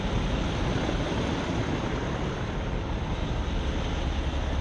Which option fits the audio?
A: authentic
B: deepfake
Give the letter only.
B